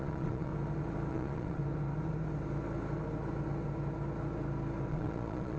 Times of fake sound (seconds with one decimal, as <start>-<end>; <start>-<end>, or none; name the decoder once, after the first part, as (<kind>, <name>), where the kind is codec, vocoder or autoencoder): 0.0-0.5 (vocoder, Vocos); 1.1-1.6; 4.9-5.6